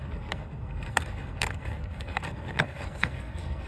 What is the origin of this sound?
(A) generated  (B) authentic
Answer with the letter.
A